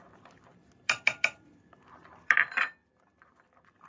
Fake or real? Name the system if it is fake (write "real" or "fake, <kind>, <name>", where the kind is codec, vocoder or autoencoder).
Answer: real